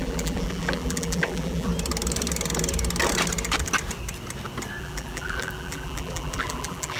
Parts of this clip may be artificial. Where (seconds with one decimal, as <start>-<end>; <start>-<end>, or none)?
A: 0.0-1.7; 4.8-7.0